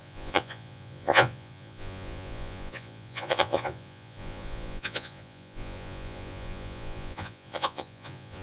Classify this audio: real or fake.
fake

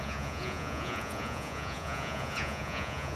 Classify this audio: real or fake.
fake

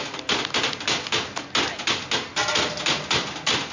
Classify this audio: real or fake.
real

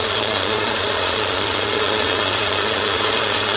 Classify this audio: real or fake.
fake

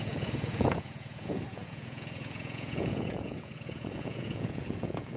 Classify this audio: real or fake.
fake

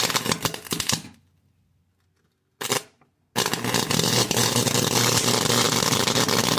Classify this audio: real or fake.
real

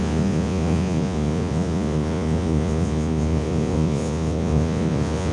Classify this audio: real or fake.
fake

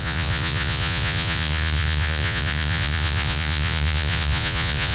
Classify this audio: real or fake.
fake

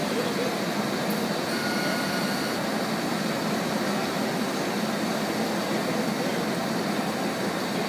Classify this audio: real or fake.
real